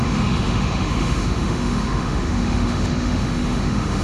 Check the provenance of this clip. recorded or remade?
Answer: remade